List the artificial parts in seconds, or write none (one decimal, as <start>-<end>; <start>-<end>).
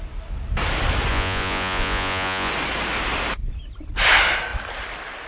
1.1-2.5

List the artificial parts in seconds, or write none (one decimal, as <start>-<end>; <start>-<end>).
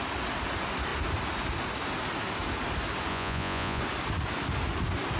3.1-3.8